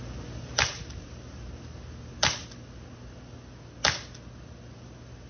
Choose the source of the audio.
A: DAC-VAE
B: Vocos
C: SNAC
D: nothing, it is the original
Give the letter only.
D